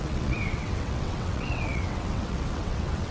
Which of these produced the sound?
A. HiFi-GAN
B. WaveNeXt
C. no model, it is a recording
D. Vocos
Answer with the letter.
B